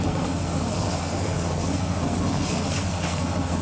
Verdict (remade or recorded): remade